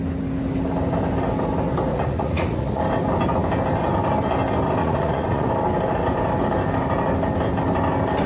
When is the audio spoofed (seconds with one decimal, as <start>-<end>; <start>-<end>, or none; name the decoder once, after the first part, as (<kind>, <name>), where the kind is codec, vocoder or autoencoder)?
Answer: 1.9-2.8 (vocoder, Vocos); 4.8-5.5